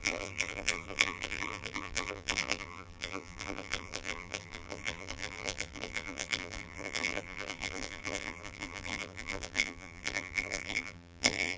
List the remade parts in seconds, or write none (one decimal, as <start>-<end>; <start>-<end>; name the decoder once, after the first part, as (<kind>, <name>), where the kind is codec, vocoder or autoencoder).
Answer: 0.0-11.6 (vocoder, BigVGAN v2)